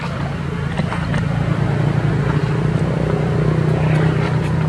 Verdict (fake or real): real